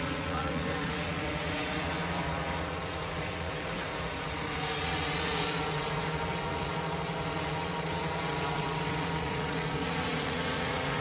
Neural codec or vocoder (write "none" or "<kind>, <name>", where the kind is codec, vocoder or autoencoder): vocoder, Vocos